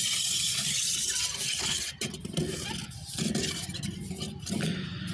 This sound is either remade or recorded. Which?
recorded